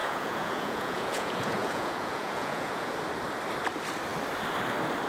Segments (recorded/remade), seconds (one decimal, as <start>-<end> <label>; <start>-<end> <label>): 0.0-2.9 remade; 2.9-5.1 recorded